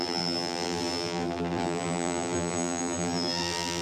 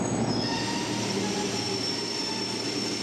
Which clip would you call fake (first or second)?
first